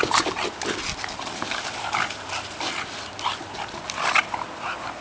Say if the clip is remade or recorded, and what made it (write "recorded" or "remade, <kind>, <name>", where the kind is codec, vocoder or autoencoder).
recorded